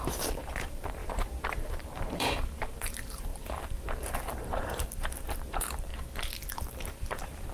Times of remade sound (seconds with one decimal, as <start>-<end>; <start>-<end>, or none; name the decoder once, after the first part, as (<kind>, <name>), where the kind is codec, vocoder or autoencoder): 0.0-5.9 (vocoder, BigVGAN v2); 6.5-7.5